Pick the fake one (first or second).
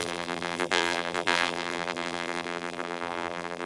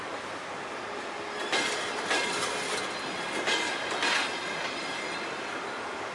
first